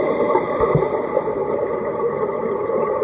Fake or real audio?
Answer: real